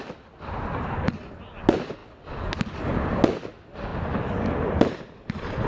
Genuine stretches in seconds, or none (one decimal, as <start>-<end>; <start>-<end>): 0.0-5.7